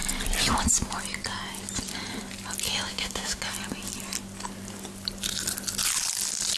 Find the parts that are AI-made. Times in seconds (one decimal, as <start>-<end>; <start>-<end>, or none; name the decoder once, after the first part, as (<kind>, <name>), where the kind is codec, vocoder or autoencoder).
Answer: 2.9-3.4 (autoencoder, DAC-VAE)